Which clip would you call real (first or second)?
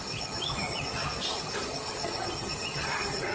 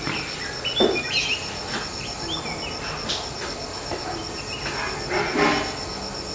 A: second